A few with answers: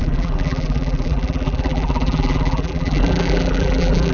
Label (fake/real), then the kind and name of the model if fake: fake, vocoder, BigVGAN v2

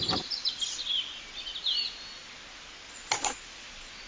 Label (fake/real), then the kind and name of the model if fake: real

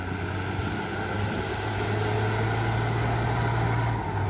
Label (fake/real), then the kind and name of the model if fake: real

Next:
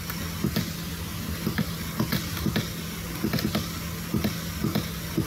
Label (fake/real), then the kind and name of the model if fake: real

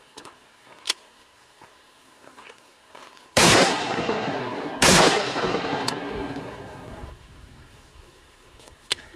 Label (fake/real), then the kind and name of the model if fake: fake, codec, SNAC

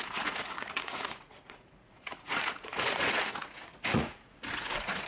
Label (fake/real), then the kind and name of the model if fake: fake, vocoder, Vocos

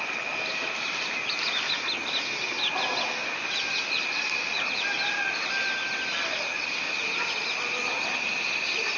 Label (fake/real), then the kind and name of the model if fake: real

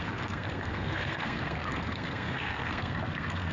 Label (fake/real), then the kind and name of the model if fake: fake, codec, SNAC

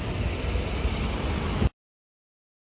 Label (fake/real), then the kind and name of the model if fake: real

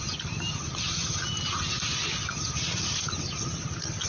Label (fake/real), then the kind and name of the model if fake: real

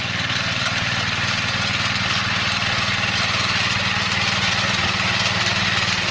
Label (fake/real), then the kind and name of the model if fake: real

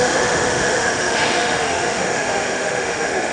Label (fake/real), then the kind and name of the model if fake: fake, autoencoder, DAC-VAE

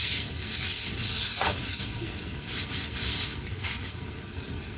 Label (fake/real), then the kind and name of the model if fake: fake, codec, SNAC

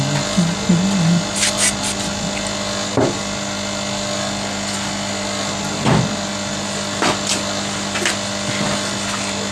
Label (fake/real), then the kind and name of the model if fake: real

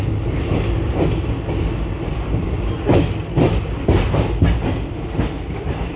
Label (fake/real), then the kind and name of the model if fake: real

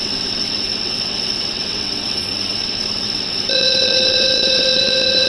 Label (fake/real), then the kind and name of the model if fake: fake, vocoder, WaveNeXt